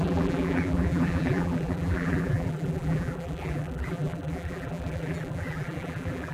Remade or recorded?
remade